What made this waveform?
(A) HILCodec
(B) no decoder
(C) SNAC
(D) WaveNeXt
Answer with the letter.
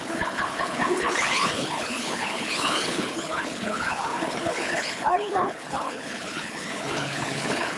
A